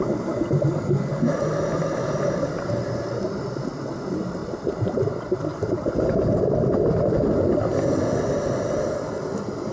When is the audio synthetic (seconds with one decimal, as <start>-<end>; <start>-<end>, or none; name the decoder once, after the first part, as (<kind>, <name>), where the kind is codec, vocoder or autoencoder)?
2.0-2.9 (vocoder, BigVGAN v2); 4.4-6.4